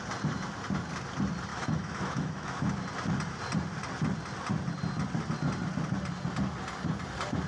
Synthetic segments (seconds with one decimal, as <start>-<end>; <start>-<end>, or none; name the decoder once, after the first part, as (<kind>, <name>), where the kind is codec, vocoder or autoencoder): 1.5-2.7 (autoencoder, DAC-VAE)